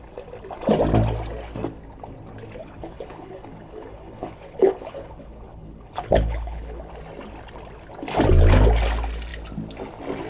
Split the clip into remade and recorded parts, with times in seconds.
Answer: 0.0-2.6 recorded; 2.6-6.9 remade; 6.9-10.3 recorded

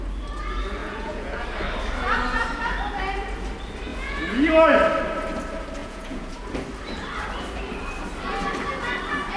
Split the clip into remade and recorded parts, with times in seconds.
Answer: 0.0-0.8 recorded; 0.8-1.4 remade; 1.4-3.9 recorded; 3.9-4.5 remade; 4.5-5.8 recorded; 5.8-6.3 remade; 6.3-9.4 recorded

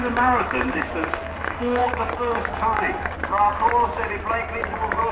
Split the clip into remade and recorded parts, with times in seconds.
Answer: 0.0-3.5 remade; 3.5-5.1 recorded

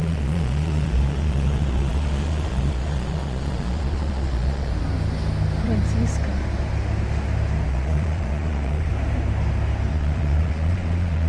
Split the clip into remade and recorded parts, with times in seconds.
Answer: 0.0-4.7 remade; 4.7-7.7 recorded; 7.7-8.9 remade; 8.9-9.9 recorded; 9.9-11.3 remade

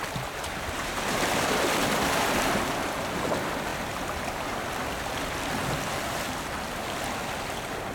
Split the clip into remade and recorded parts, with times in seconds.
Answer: 0.0-7.9 recorded

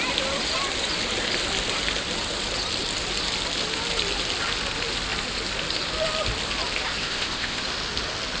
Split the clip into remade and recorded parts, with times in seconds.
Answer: 0.0-7.0 recorded; 7.0-7.6 remade; 7.6-8.4 recorded

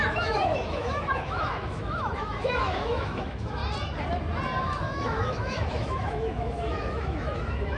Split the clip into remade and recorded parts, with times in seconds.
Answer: 0.0-3.6 remade; 3.6-4.6 recorded; 4.6-7.8 remade